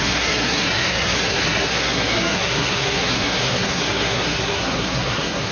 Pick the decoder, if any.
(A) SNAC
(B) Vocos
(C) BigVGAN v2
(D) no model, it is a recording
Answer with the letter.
A